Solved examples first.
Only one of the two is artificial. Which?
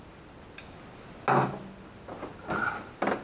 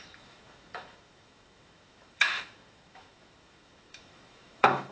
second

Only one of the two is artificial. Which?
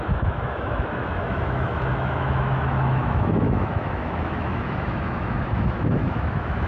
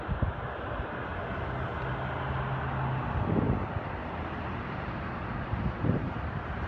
first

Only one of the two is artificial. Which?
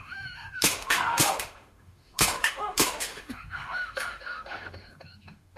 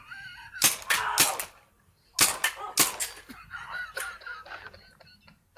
first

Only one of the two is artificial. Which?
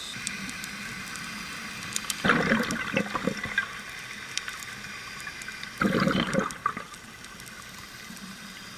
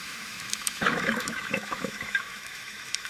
second